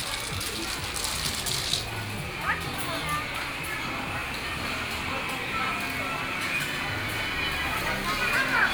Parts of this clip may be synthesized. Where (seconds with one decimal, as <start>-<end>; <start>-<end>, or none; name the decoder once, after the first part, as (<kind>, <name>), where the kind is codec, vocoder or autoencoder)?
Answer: none